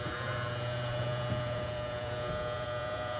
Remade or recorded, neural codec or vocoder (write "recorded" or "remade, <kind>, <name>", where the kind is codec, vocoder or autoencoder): remade, vocoder, Vocos